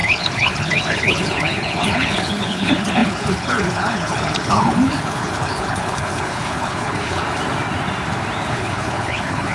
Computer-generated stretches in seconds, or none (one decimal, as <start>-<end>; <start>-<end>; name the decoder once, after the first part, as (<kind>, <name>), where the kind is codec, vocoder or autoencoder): 0.0-7.2 (codec, HILCodec); 8.5-9.5